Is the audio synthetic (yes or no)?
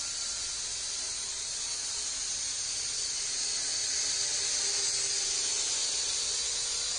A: no